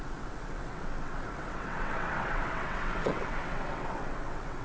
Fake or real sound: fake